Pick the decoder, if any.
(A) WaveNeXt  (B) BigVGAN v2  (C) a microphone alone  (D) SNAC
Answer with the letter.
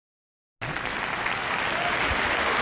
C